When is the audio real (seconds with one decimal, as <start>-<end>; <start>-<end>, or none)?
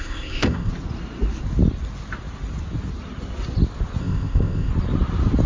0.7-4.0; 4.7-5.5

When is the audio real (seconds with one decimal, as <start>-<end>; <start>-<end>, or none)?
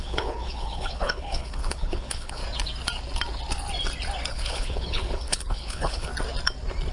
2.4-4.3; 6.1-6.9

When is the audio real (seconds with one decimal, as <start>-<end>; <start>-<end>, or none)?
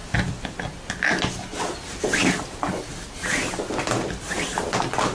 0.0-5.1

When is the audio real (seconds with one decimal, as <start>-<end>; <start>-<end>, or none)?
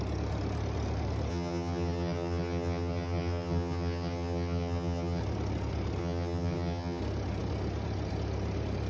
0.0-1.3; 5.2-6.0; 7.0-8.9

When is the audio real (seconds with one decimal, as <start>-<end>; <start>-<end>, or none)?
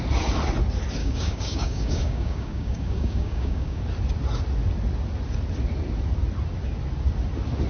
0.0-1.0; 3.8-7.7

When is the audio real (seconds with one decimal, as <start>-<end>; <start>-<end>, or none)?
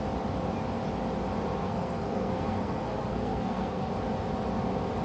0.0-1.6; 3.9-5.0